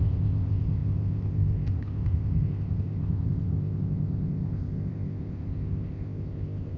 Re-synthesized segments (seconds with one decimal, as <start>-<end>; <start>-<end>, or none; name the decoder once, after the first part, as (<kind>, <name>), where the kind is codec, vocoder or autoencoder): 0.0-6.8 (codec, ZipCodec)